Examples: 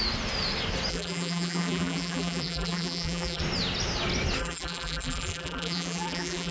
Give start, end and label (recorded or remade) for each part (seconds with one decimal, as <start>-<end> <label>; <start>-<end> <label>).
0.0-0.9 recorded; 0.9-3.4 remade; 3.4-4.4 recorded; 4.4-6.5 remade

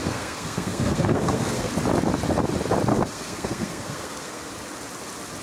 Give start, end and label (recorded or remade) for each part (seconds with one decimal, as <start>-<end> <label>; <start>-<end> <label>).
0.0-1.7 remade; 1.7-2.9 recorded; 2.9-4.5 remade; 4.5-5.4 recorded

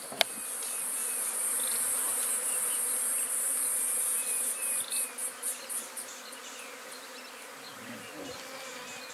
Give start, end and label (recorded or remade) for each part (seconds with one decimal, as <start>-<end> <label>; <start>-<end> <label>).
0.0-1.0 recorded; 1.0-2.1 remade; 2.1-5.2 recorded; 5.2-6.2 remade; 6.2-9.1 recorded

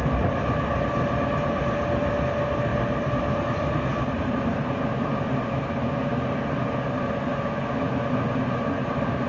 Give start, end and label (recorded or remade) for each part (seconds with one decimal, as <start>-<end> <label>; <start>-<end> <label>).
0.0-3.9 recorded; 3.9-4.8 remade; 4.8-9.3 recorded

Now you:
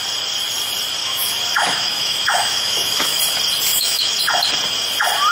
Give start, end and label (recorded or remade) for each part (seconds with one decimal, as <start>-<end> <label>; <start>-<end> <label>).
0.0-1.0 recorded; 1.0-3.2 remade; 3.2-3.7 recorded; 3.7-4.2 remade; 4.2-5.3 recorded

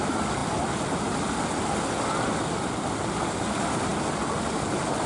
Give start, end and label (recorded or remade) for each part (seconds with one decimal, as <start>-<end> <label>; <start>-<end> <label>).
0.0-0.4 remade; 0.4-3.5 recorded; 3.5-3.9 remade; 3.9-5.1 recorded

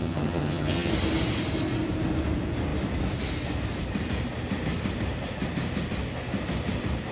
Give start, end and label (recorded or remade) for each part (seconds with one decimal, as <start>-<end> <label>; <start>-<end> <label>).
0.0-0.9 remade; 0.9-7.1 recorded